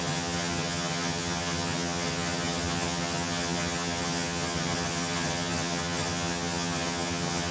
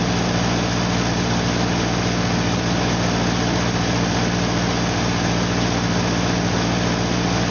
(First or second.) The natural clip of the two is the second